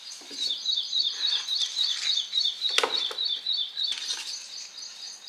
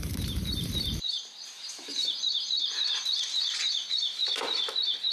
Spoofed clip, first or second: second